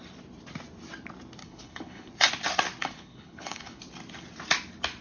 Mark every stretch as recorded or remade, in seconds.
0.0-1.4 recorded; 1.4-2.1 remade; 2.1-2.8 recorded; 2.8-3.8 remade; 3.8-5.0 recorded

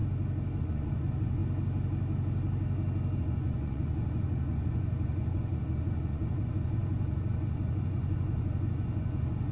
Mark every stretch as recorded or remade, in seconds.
0.0-0.6 recorded; 0.6-1.4 remade; 1.4-3.2 recorded; 3.2-9.5 remade

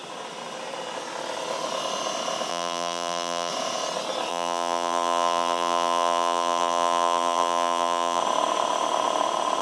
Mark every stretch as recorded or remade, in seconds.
0.0-2.5 recorded; 2.5-3.5 remade; 3.5-4.3 recorded; 4.3-8.2 remade; 8.2-9.6 recorded

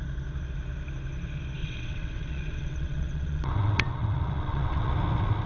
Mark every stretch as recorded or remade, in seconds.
0.0-1.6 recorded; 1.6-4.9 remade; 4.9-5.5 recorded

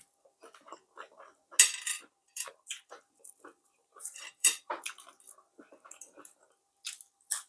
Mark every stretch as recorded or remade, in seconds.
0.0-2.2 recorded; 2.2-4.7 remade; 4.7-7.5 recorded

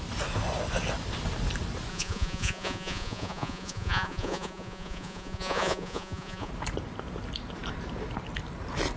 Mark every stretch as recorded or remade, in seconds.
0.0-1.9 recorded; 1.9-6.5 remade; 6.5-9.0 recorded

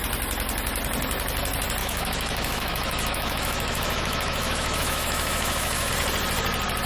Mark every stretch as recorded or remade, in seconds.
0.0-1.8 recorded; 1.8-5.9 remade; 5.9-6.9 recorded

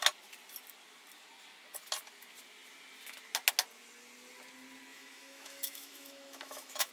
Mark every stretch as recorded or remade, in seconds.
0.0-4.9 recorded; 4.9-6.9 remade